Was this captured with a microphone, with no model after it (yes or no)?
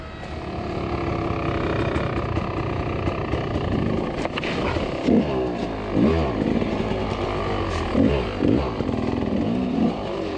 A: yes